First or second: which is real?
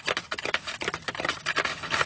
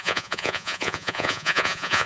first